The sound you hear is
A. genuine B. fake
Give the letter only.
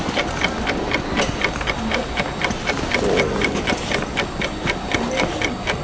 A